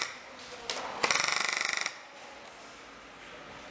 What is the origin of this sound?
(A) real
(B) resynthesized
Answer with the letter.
A